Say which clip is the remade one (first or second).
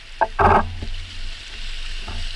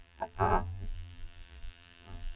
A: second